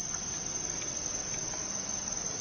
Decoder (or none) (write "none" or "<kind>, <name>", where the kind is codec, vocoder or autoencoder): vocoder, BigVGAN v2